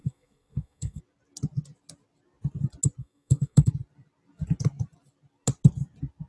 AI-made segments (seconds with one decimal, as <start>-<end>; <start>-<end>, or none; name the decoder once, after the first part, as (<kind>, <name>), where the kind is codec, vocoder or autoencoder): 0.0-1.0 (codec, SNAC); 3.0-3.7